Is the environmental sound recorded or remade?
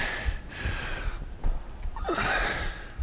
recorded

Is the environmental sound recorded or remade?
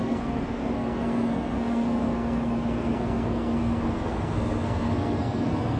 remade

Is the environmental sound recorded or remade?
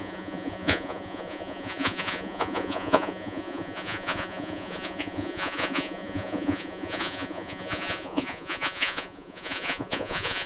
remade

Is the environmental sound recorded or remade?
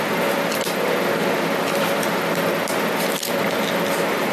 recorded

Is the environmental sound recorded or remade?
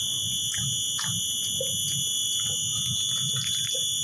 remade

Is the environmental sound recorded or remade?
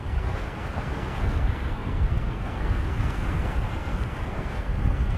remade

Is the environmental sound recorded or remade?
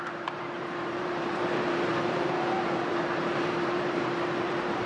remade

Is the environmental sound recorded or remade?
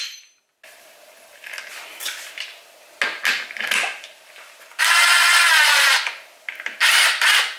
recorded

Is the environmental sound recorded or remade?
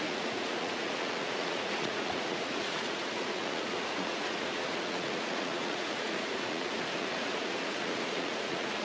remade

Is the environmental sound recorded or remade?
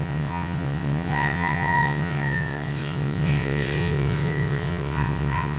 remade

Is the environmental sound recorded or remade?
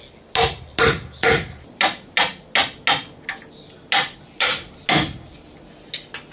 recorded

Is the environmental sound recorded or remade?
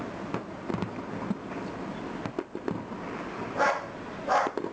recorded